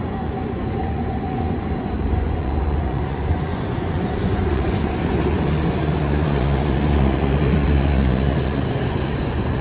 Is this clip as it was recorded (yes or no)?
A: no